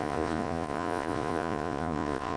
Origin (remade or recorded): remade